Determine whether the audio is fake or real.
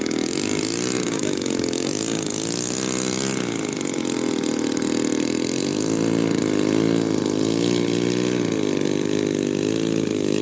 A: fake